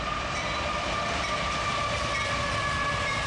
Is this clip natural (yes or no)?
no